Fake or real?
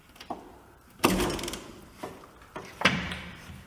fake